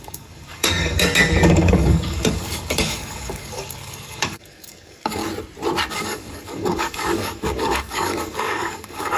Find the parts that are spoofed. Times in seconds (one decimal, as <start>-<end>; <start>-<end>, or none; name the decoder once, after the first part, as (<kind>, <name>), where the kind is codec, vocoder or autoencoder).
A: 0.0-5.2 (codec, DAC); 5.9-9.2